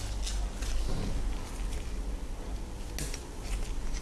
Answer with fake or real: real